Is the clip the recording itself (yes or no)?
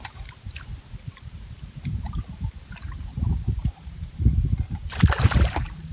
no